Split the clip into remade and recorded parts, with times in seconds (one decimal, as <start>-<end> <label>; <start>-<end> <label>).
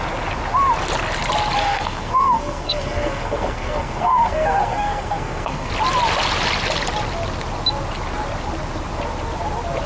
0.0-1.6 recorded; 1.6-5.7 remade; 5.7-9.9 recorded